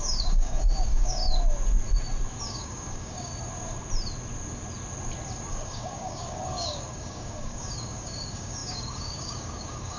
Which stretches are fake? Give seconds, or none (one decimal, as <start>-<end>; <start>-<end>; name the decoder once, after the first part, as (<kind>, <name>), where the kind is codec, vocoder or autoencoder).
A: 0.0-1.2 (codec, DAC); 2.4-3.3; 5.5-10.0